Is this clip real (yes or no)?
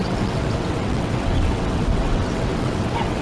no